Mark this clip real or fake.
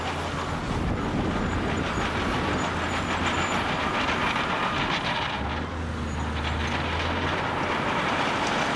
real